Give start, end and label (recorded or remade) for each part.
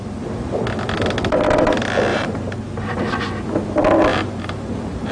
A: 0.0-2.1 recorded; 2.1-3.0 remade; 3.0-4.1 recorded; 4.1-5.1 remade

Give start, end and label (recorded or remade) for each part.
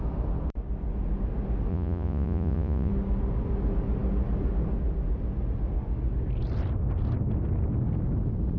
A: 0.0-1.7 recorded; 1.7-2.9 remade; 2.9-8.6 recorded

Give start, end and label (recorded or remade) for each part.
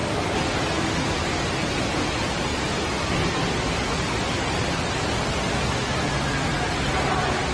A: 0.0-7.5 recorded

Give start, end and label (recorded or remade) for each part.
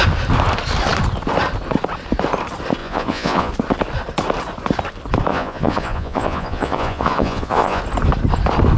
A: 0.0-2.8 recorded; 2.8-3.5 remade; 3.5-5.3 recorded; 5.3-7.8 remade; 7.8-8.8 recorded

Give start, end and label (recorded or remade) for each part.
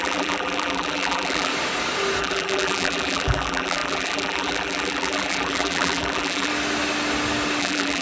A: 0.0-1.5 remade; 1.5-2.2 recorded; 2.2-6.5 remade; 6.5-7.6 recorded; 7.6-8.0 remade